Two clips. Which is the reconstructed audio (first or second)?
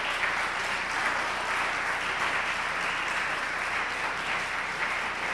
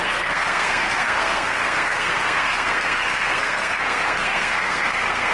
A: second